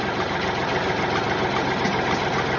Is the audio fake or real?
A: real